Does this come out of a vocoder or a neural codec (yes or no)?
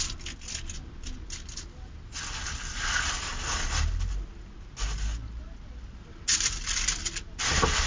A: no